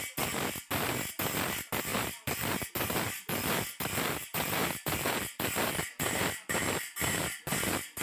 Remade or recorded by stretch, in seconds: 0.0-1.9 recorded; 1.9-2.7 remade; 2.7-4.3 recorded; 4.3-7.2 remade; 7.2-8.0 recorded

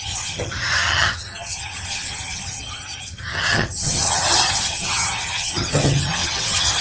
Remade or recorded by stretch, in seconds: 0.0-6.8 remade

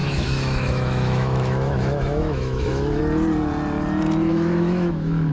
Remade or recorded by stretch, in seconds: 0.0-3.0 remade; 3.0-4.3 recorded; 4.3-5.3 remade